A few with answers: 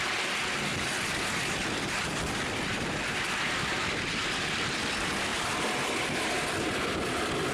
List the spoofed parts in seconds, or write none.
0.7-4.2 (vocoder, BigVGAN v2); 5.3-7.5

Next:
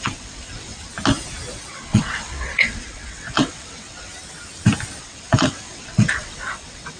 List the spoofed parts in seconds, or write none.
0.0-0.9 (vocoder, WaveNeXt); 1.7-4.1; 5.0-7.0

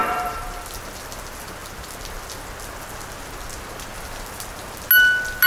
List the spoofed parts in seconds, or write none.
0.0-0.6 (vocoder, BigVGAN v2)

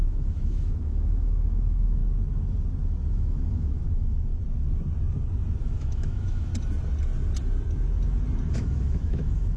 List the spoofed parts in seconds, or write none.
0.0-2.0 (autoencoder, DAC-VAE); 3.1-4.3; 5.6-6.5; 8.5-9.6